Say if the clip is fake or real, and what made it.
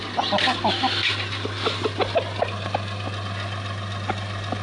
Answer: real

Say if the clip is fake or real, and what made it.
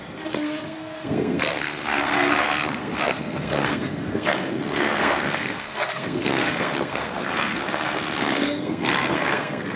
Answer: fake, codec, SNAC